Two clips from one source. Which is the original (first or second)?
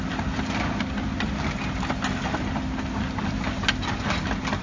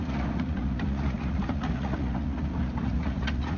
first